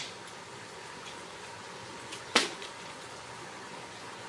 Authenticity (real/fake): fake